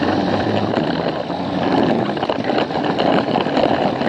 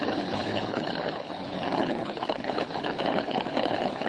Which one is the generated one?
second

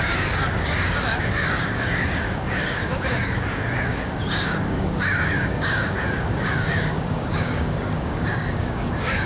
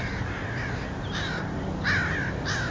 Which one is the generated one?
first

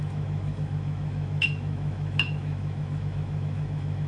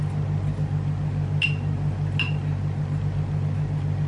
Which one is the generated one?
first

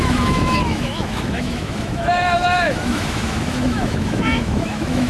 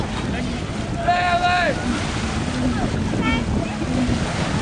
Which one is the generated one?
first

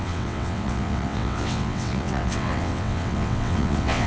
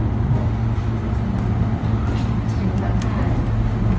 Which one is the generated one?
first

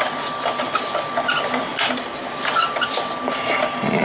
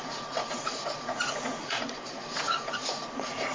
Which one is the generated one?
second